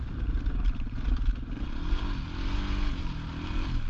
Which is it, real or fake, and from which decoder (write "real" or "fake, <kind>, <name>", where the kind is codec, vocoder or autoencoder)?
real